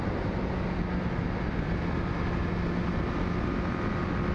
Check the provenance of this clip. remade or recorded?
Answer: recorded